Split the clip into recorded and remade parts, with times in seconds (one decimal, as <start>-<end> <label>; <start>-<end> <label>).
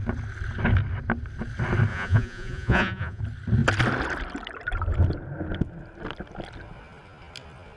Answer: 0.0-1.9 recorded; 1.9-3.2 remade; 3.2-7.8 recorded